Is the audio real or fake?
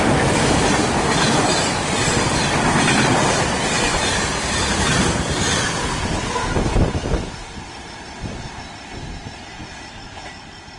real